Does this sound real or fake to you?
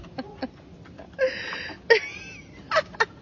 real